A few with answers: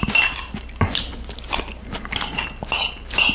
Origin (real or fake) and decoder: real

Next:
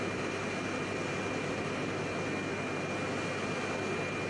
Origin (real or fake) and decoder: real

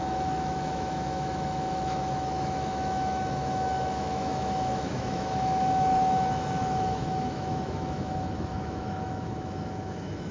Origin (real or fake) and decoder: fake, autoencoder, DAC-VAE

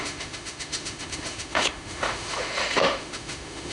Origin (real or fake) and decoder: fake, autoencoder, DAC-VAE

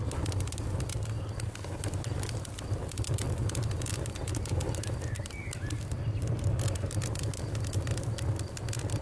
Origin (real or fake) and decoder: real